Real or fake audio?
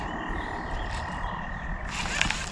real